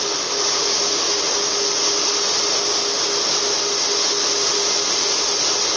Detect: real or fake real